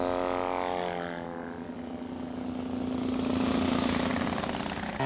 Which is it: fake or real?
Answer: real